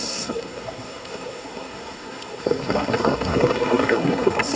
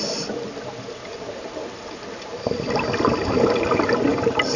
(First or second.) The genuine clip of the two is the second